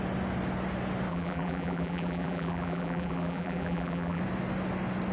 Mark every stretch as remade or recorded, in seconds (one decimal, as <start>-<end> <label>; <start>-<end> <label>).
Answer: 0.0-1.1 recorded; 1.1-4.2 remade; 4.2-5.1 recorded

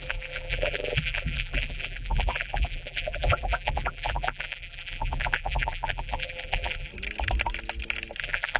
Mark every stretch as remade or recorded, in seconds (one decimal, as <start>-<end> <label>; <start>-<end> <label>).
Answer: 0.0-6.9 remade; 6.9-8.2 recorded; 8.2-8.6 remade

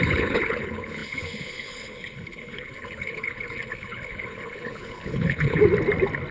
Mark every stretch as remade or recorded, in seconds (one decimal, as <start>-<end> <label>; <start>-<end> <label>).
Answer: 0.0-5.6 remade; 5.6-6.3 recorded

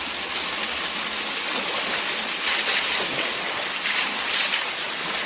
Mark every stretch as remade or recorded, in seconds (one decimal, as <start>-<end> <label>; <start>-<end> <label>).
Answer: 0.0-5.3 recorded